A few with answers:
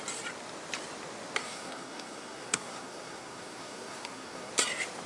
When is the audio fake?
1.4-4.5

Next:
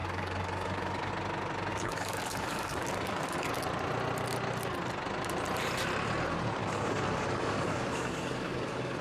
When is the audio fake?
0.0-1.1; 1.7-3.6; 6.6-9.0

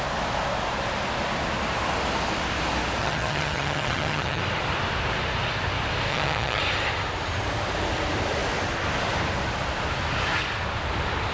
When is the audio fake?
3.0-4.4; 6.1-6.6

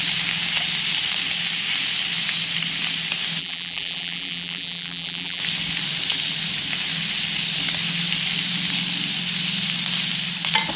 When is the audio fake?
3.4-5.4

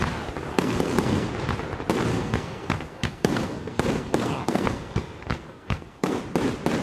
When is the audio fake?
0.5-1.3; 2.1-6.2